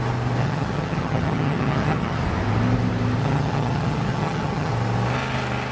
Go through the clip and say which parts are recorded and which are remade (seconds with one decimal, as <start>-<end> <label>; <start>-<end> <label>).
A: 0.0-0.4 recorded; 0.4-2.2 remade; 2.2-3.2 recorded; 3.2-4.7 remade; 4.7-5.7 recorded